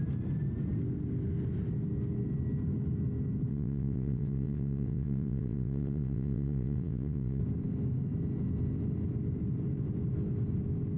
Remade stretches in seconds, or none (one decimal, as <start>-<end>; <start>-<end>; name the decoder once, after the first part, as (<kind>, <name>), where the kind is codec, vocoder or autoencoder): 3.5-7.4 (vocoder, WaveNeXt)